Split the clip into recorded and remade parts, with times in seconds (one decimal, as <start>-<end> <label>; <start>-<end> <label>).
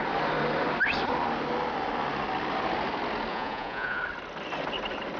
0.0-3.3 recorded; 3.3-4.0 remade; 4.0-5.2 recorded